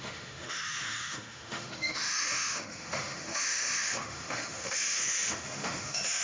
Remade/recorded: remade